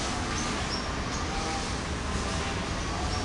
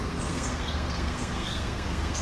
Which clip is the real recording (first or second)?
first